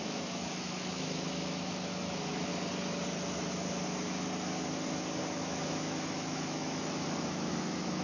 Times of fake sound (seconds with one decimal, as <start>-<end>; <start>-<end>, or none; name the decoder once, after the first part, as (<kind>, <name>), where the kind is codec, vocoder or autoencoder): 0.0-2.5 (autoencoder, DAC-VAE); 5.2-8.0

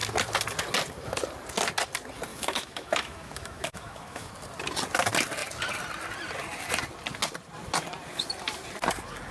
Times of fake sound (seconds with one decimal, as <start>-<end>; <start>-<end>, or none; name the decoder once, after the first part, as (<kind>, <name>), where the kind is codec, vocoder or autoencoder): 2.3-4.3 (autoencoder, DAC-VAE)

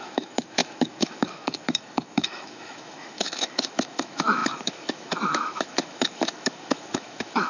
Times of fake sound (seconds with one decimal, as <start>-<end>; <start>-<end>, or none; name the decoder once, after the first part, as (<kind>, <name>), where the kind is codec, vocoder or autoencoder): 0.0-7.5 (autoencoder, DAC-VAE)

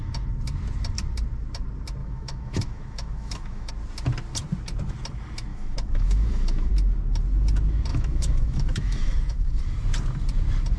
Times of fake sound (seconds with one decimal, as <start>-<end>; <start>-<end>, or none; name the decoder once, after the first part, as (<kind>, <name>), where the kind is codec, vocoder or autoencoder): 2.0-3.7 (autoencoder, DAC-VAE); 5.5-6.7; 7.9-9.6

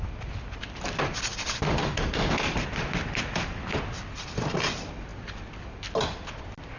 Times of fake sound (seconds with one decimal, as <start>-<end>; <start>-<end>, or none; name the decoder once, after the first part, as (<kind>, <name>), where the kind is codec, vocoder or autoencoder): none

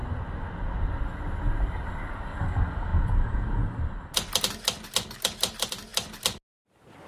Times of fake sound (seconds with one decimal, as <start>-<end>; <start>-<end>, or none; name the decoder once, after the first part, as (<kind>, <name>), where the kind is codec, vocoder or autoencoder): none

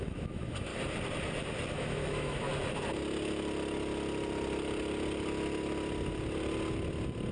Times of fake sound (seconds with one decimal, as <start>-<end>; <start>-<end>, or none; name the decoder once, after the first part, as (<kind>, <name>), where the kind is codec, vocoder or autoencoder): 0.0-0.7 (autoencoder, DAC-VAE); 1.7-2.5